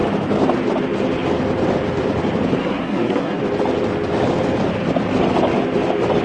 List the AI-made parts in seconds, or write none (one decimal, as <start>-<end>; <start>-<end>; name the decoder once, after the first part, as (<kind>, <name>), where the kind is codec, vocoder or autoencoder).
2.6-3.4 (codec, SNAC)